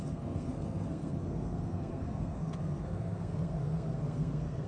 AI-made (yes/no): yes